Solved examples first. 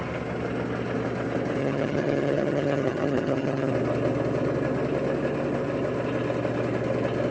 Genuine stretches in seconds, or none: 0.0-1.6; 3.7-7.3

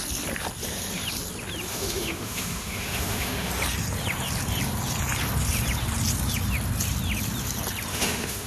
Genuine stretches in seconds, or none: 0.0-1.7; 3.5-7.9

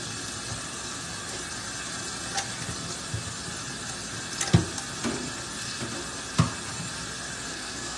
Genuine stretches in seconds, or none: 0.0-7.5